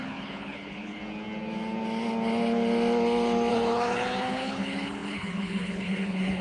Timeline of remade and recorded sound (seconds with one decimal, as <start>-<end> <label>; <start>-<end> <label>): 0.0-1.0 remade; 1.0-3.5 recorded; 3.5-6.4 remade